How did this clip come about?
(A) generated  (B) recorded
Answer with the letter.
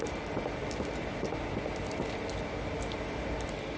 B